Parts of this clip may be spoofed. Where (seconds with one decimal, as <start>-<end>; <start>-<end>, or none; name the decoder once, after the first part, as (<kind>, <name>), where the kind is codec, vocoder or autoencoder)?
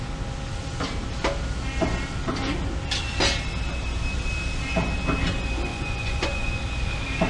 5.7-6.6 (vocoder, Vocos)